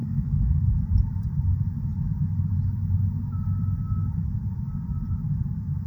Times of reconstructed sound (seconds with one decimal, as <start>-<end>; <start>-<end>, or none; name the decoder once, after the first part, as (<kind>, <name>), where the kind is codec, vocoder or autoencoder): 0.0-0.7 (codec, SNAC)